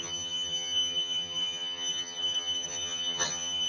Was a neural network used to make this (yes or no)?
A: yes